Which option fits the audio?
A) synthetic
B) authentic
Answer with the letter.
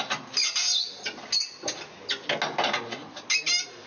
B